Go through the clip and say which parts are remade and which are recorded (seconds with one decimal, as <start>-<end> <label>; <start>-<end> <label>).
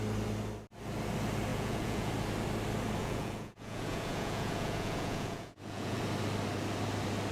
0.0-1.5 recorded; 1.5-2.1 remade; 2.1-3.0 recorded; 3.0-6.0 remade; 6.0-7.3 recorded